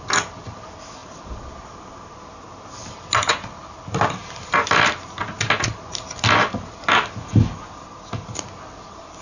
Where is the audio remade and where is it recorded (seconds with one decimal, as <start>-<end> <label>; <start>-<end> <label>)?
0.0-9.2 recorded